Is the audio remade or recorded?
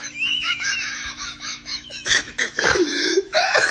remade